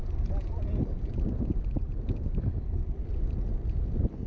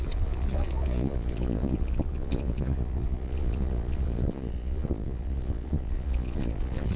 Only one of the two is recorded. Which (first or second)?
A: first